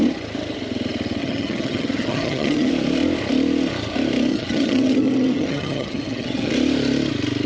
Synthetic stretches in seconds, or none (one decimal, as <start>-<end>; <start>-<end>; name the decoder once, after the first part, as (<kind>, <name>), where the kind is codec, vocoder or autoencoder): 1.2-2.7 (vocoder, HiFi-GAN); 4.3-6.5